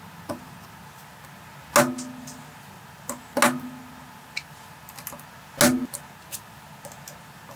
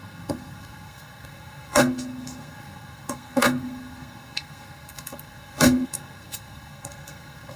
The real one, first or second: first